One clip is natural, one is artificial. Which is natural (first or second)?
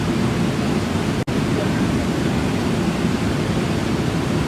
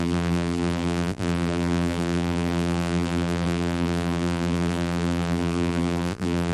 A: first